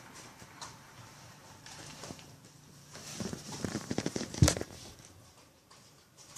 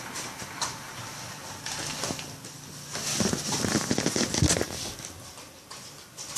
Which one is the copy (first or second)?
first